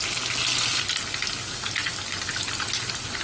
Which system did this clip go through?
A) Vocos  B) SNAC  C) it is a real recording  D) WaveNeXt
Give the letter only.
C